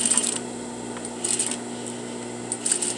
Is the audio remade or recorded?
recorded